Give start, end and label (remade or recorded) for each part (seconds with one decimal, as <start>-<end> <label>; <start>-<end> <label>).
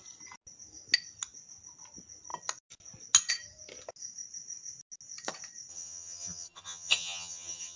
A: 0.0-5.7 recorded; 5.7-7.8 remade